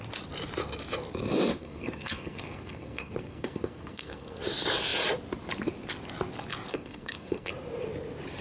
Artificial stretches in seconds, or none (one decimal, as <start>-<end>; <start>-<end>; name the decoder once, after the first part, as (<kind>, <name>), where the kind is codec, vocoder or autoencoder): 1.5-4.4 (codec, SNAC); 6.7-7.5